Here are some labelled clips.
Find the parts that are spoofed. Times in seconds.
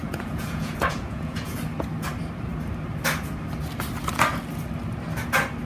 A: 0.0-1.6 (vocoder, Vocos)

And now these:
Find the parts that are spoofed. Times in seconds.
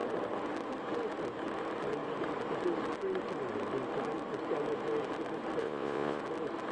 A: 5.6-6.2 (vocoder, Vocos)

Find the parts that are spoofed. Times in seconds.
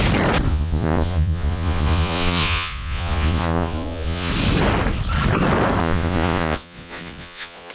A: 0.5-4.3 (vocoder, Vocos); 5.8-7.7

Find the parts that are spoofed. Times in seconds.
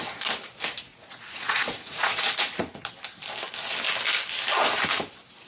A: 0.9-2.9 (vocoder, Vocos)